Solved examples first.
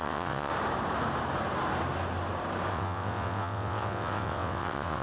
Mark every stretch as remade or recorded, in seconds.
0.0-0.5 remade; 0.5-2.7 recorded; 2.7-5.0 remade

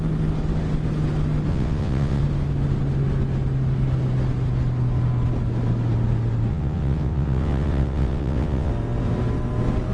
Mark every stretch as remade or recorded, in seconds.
0.0-1.5 recorded; 1.5-2.2 remade; 2.2-6.5 recorded; 6.5-8.7 remade; 8.7-9.9 recorded

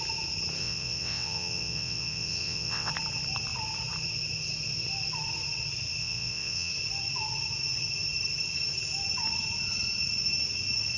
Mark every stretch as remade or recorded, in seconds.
0.0-0.6 recorded; 0.6-2.9 remade; 2.9-6.0 recorded; 6.0-6.7 remade; 6.7-11.0 recorded

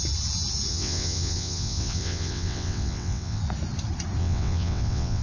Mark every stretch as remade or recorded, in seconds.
0.0-0.7 recorded; 0.7-3.4 remade; 3.4-4.2 recorded; 4.2-5.2 remade

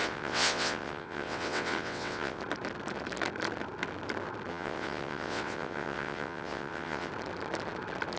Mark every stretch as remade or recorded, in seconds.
0.0-2.4 remade; 2.4-4.5 recorded; 4.5-7.1 remade; 7.1-8.2 recorded

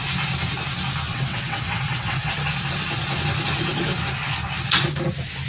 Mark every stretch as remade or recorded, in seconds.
0.0-1.1 recorded; 1.1-2.3 remade; 2.3-5.5 recorded